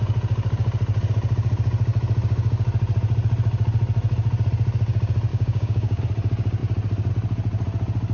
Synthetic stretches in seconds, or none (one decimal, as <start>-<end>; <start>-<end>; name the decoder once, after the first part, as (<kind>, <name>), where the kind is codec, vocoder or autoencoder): 5.3-6.0 (codec, DAC)